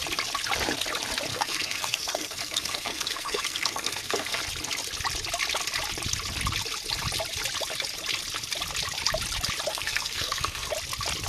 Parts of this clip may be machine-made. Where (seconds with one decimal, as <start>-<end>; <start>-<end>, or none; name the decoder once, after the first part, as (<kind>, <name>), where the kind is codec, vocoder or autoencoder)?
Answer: 1.3-4.4 (codec, SNAC); 9.7-10.7